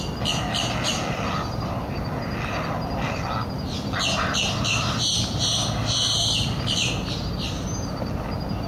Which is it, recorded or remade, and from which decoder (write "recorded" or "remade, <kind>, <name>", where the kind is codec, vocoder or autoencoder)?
recorded